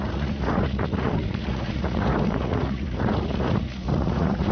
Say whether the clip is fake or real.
fake